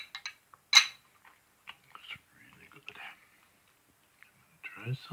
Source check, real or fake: real